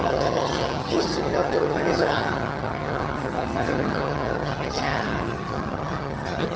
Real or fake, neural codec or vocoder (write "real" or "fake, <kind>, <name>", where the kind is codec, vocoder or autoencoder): fake, vocoder, HiFi-GAN